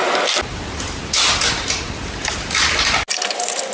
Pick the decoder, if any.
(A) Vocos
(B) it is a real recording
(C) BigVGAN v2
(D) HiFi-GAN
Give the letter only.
B